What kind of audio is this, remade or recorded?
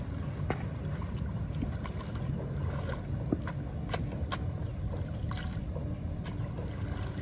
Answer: recorded